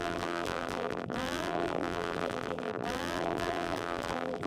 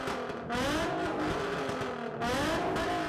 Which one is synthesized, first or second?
first